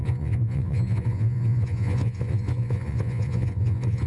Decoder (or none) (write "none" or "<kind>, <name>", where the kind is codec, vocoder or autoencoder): vocoder, Vocos